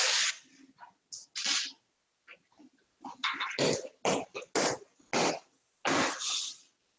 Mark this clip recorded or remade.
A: recorded